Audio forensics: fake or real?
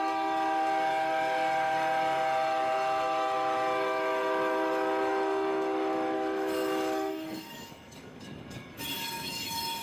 fake